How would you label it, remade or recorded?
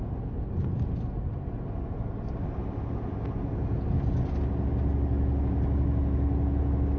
recorded